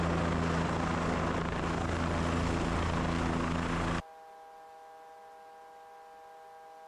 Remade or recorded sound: recorded